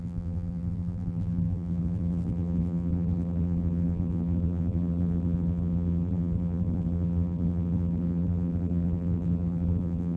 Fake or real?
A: fake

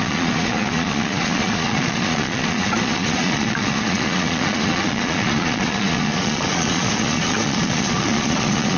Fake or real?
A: fake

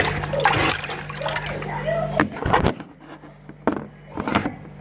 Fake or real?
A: real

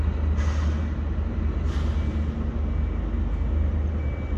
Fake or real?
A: real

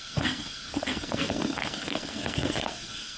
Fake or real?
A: fake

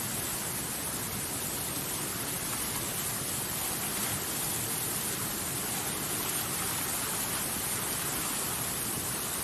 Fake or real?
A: real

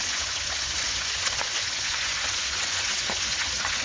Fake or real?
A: fake